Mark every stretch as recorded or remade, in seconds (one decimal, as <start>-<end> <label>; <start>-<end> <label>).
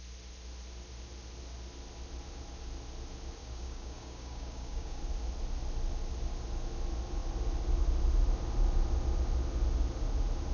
0.0-3.4 recorded; 3.4-5.0 remade; 5.0-10.5 recorded